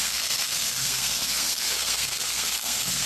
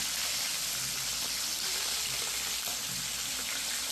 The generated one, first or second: first